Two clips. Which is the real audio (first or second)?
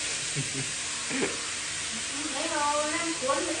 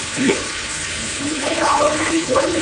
first